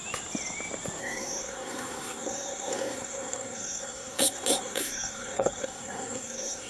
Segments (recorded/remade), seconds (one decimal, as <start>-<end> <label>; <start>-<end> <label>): 0.0-1.0 recorded; 1.0-6.7 remade